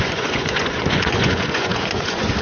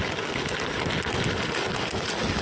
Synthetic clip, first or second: first